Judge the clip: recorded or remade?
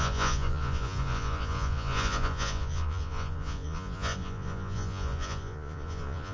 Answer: remade